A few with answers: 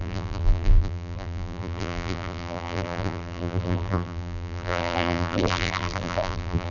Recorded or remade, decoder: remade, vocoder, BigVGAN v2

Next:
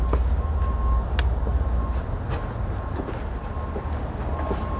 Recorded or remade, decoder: recorded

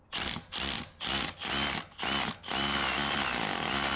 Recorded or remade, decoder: recorded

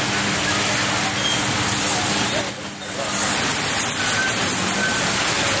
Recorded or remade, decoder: recorded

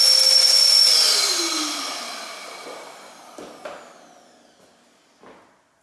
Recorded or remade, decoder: recorded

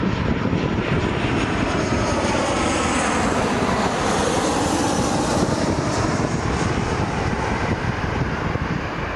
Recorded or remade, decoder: remade, vocoder, BigVGAN v2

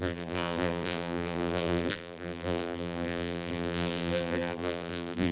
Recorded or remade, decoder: remade, vocoder, BigVGAN v2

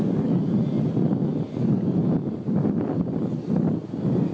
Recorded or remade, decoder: recorded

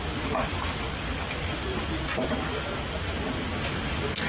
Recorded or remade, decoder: recorded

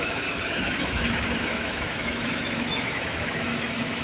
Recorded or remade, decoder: remade, autoencoder, DAC-VAE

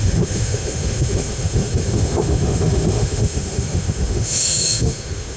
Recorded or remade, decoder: remade, autoencoder, DAC-VAE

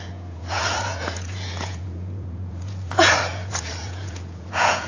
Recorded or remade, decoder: remade, vocoder, Vocos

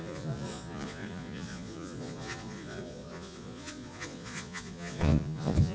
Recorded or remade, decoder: remade, vocoder, Vocos